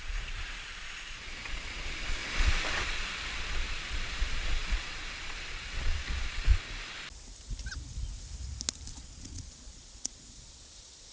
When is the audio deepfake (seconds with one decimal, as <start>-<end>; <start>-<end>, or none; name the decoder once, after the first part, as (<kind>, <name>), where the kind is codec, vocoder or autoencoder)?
0.0-2.2 (vocoder, Vocos); 2.7-6.5; 8.9-11.1